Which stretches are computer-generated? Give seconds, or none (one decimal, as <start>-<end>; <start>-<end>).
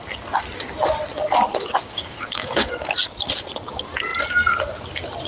1.8-2.7